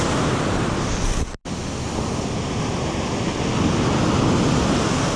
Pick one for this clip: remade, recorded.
recorded